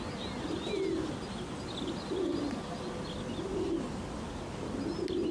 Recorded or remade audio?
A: recorded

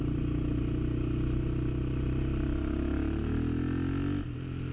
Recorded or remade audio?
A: recorded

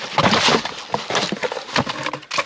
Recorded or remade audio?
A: recorded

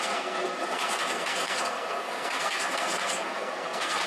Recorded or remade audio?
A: remade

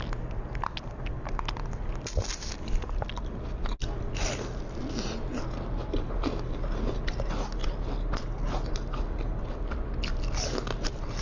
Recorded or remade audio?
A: recorded